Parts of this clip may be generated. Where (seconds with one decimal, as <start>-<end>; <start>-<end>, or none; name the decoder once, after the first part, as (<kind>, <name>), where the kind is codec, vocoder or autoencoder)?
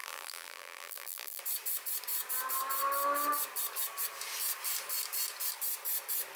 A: 0.0-1.4 (vocoder, BigVGAN v2)